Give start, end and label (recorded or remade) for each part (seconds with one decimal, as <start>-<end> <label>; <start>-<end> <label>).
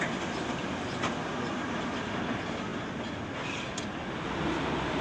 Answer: 0.0-5.0 recorded